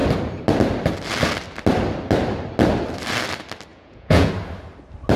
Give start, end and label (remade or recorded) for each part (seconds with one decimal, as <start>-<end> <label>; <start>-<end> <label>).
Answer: 0.0-3.7 recorded; 3.7-4.3 remade; 4.3-5.2 recorded